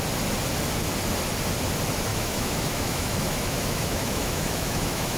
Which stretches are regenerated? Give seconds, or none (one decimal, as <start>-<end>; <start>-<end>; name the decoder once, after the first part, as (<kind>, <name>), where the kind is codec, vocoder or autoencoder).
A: 2.1-5.2 (autoencoder, DAC-VAE)